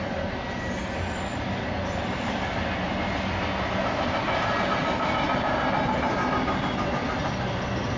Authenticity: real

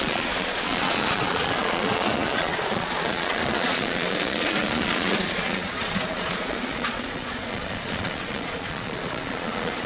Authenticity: fake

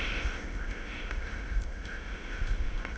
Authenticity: fake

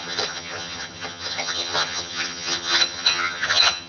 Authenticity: fake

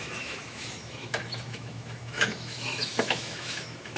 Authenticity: fake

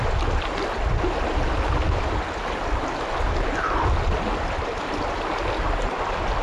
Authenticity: real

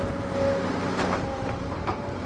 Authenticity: fake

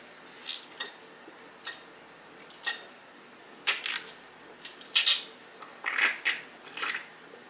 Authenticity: real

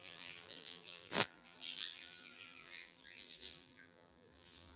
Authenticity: fake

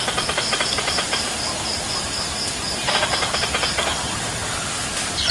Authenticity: fake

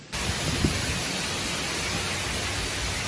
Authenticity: real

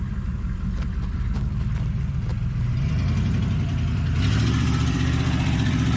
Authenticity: fake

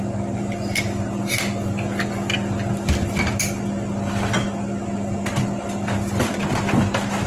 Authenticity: real